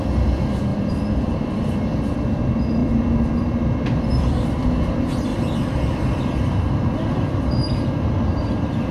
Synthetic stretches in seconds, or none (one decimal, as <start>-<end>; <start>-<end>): 0.0-5.3; 6.6-8.9